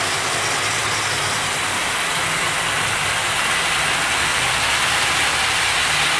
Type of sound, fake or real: real